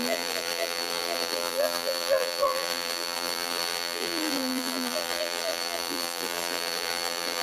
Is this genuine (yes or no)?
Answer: no